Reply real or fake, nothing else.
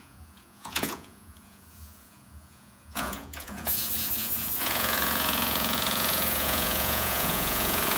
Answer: fake